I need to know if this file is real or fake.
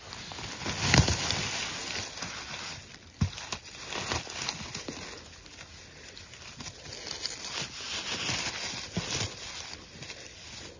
real